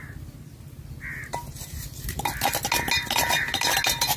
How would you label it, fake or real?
real